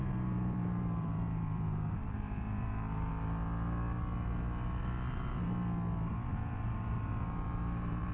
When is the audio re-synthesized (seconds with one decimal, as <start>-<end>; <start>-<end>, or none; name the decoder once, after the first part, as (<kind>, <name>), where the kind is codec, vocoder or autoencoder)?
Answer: 0.0-3.1 (vocoder, BigVGAN v2); 6.1-8.1